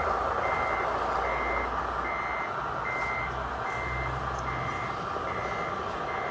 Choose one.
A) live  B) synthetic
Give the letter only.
A